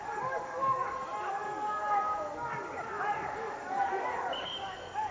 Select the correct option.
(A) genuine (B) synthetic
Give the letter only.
B